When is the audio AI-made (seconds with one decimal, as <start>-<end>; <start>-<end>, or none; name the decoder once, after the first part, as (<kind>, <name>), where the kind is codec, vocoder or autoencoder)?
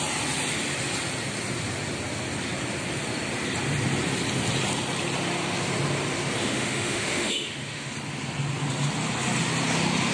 6.4-7.9 (autoencoder, DAC-VAE)